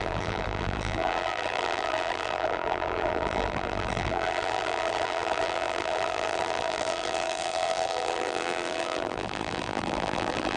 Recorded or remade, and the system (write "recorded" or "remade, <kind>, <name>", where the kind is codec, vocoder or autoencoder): remade, vocoder, BigVGAN v2